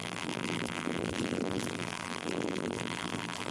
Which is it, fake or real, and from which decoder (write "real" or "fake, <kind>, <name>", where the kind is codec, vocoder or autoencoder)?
fake, vocoder, BigVGAN v2